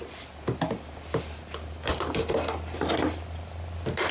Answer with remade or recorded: recorded